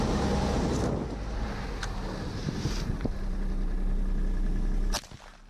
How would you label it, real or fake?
real